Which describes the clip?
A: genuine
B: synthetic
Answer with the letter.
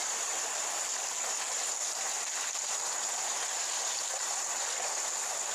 A